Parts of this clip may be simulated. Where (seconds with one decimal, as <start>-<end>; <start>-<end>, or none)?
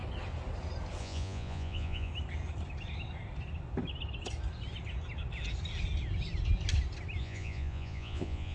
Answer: 1.0-2.1; 7.2-8.5